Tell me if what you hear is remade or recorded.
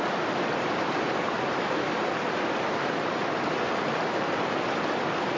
remade